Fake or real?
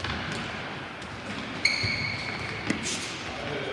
real